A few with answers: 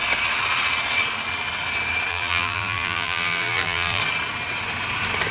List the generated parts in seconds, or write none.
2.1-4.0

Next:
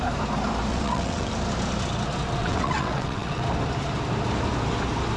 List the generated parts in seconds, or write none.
0.7-1.3; 2.4-3.4

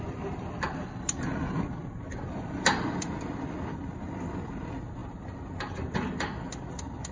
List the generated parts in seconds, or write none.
none

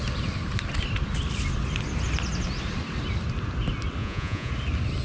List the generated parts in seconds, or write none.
4.0-4.5

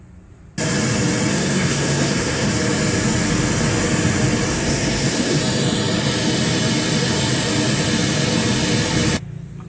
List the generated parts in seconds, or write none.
1.3-2.5; 4.5-5.4

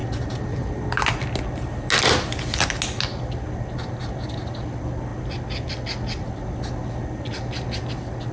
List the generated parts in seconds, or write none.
none